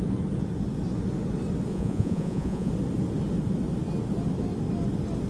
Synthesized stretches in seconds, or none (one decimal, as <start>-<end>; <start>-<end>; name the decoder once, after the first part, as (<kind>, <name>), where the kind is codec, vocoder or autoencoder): 1.7-2.7 (vocoder, Vocos)